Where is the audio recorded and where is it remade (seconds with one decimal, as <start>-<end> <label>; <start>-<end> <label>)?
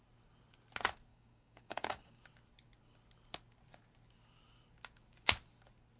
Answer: 0.0-1.1 recorded; 1.1-2.2 remade; 2.2-6.0 recorded